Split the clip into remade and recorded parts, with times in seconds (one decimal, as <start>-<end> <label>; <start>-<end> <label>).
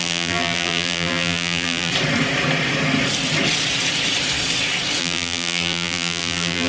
0.0-1.9 remade; 1.9-5.0 recorded; 5.0-6.7 remade